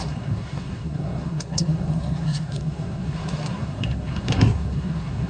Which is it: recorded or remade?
remade